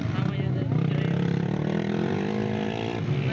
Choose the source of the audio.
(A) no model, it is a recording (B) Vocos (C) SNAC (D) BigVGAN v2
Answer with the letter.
A